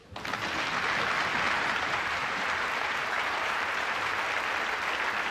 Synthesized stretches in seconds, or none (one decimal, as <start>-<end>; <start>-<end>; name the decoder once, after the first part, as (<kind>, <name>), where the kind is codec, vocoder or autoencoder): 1.3-4.1 (vocoder, BigVGAN v2)